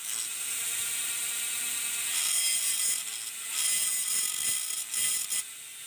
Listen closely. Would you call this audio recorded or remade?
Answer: recorded